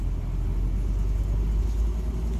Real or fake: real